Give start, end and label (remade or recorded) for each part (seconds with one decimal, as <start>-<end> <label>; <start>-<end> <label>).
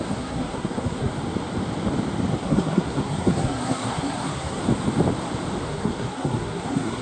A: 0.0-1.1 remade; 1.1-2.4 recorded; 2.4-4.6 remade; 4.6-5.6 recorded; 5.6-7.0 remade